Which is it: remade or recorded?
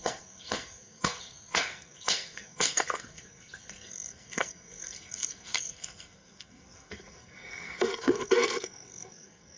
remade